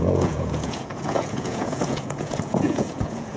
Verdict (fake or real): fake